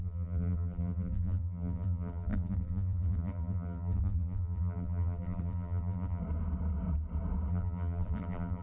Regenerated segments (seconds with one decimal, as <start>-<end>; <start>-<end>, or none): 0.0-6.2; 7.5-8.6